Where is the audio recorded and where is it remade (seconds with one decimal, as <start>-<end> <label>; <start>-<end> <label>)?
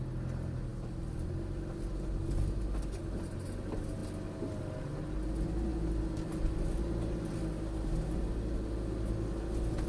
0.0-9.9 recorded